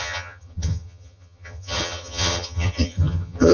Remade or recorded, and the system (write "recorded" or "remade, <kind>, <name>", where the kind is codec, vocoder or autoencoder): remade, vocoder, HiFi-GAN